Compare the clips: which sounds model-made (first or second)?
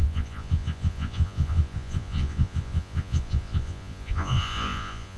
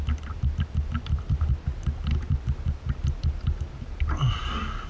first